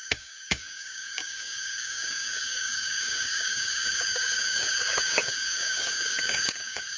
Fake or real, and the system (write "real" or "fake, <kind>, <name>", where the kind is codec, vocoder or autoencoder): fake, codec, DAC